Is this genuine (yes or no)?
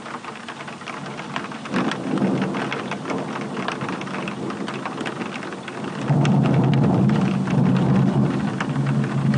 yes